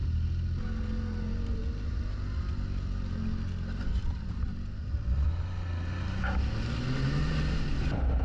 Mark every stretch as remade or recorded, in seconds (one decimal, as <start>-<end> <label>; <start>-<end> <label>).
0.0-3.9 recorded; 3.9-4.5 remade; 4.5-8.2 recorded